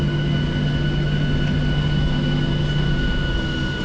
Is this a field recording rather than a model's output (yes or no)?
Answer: yes